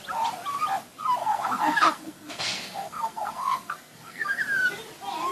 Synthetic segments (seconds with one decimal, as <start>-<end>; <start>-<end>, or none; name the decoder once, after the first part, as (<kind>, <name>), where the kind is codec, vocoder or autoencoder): 1.2-4.4 (codec, SNAC)